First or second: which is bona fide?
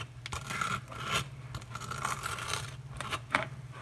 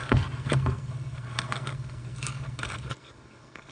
first